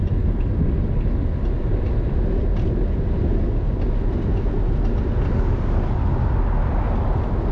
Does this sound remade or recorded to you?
recorded